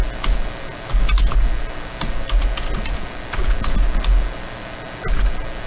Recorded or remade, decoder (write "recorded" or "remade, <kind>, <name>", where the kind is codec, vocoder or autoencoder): recorded